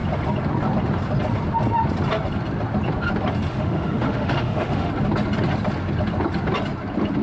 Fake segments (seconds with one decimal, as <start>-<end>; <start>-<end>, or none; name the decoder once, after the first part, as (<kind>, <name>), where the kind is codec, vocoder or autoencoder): 3.5-4.9 (autoencoder, DAC-VAE)